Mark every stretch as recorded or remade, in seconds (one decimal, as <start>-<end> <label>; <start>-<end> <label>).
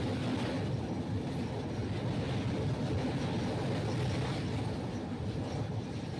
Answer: 0.0-6.2 recorded